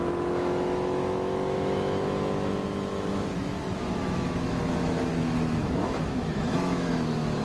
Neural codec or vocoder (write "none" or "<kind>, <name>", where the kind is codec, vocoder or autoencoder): autoencoder, DAC-VAE